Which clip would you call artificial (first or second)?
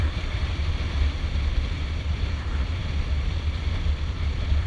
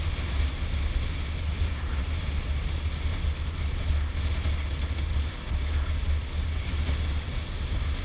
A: first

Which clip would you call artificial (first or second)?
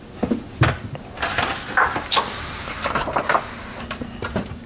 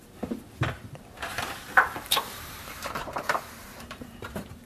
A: second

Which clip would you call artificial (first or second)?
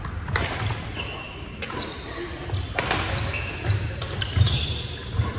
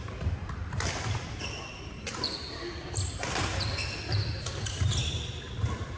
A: second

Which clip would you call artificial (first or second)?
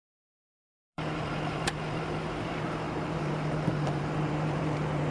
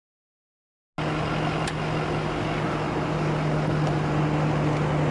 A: first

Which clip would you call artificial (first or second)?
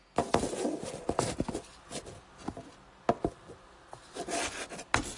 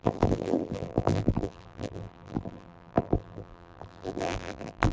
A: second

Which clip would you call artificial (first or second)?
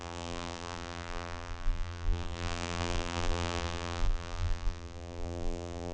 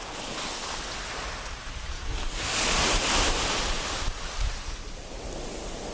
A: first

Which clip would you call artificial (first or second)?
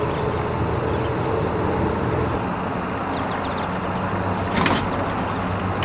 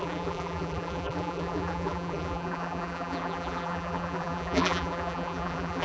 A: second